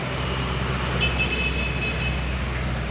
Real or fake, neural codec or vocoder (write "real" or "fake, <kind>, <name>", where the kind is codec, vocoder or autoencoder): real